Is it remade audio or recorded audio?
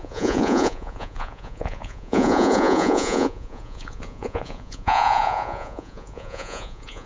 remade